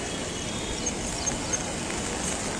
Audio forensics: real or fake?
real